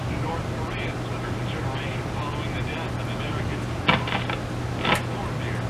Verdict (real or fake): real